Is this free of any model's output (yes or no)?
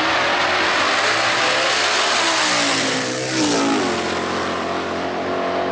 yes